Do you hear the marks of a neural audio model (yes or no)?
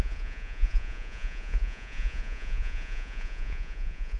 yes